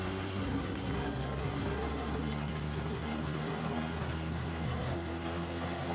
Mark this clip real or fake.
fake